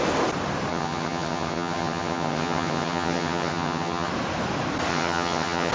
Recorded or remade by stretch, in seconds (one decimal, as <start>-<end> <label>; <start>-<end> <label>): 0.0-0.7 recorded; 0.7-4.1 remade; 4.1-4.9 recorded; 4.9-5.7 remade